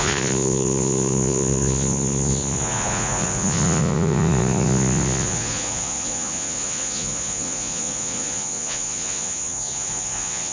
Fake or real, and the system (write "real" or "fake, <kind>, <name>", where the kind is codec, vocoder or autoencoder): fake, vocoder, Vocos